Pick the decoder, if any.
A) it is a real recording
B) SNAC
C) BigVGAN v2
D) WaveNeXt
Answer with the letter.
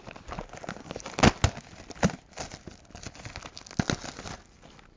A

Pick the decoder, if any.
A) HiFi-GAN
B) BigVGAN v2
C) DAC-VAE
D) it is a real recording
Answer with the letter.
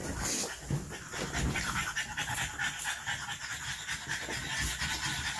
D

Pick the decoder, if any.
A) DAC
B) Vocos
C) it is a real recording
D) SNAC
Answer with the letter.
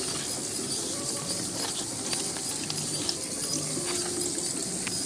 C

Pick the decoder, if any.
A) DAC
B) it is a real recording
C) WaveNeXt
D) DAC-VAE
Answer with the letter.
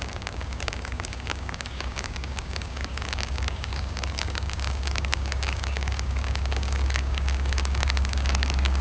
A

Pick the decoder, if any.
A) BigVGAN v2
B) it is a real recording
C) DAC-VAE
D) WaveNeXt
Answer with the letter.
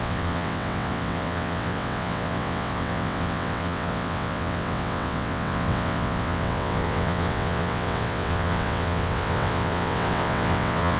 D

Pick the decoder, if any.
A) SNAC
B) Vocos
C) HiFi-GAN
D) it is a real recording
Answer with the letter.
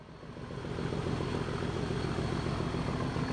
D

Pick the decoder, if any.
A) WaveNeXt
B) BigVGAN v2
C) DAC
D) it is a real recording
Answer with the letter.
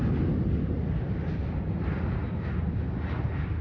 D